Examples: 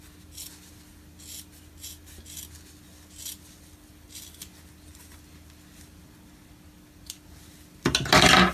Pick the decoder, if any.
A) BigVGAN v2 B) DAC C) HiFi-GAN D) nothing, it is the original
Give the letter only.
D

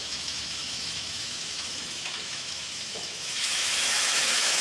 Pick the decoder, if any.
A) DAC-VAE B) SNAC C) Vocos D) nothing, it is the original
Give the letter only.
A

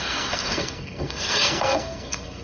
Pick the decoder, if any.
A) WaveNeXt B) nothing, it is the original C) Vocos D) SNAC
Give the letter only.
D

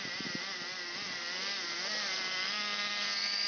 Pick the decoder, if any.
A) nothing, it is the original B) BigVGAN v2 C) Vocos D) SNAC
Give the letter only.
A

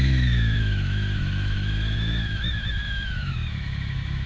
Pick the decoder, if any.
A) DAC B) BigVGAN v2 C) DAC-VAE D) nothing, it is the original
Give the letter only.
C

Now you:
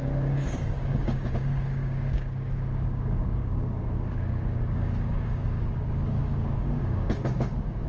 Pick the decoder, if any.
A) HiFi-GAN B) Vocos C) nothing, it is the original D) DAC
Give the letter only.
D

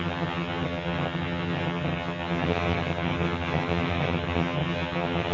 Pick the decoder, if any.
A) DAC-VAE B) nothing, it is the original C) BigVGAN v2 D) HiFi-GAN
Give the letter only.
D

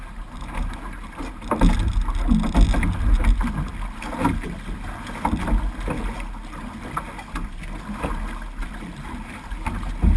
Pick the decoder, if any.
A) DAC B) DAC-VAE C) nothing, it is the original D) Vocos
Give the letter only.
C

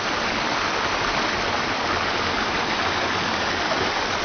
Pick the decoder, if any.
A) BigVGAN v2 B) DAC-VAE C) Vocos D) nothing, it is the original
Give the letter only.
A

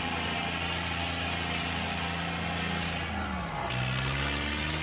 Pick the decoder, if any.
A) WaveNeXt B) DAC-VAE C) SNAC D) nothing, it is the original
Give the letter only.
D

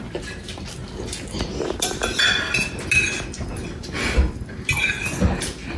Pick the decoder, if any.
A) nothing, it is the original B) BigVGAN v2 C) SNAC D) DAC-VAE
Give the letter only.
A